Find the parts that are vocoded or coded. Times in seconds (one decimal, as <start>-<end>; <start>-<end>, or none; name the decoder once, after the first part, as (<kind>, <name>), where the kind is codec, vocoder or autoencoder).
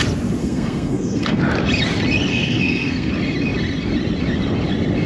0.4-1.4 (codec, SNAC); 2.3-3.1